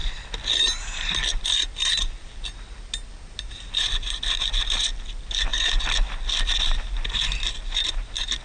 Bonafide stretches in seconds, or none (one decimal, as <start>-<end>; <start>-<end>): 0.0-8.4